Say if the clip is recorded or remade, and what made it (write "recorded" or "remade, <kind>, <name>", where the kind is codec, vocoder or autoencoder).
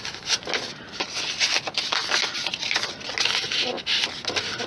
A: recorded